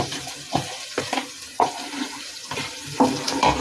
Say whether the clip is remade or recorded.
remade